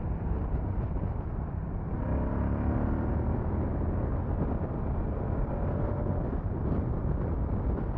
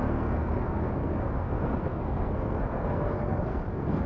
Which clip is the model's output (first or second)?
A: second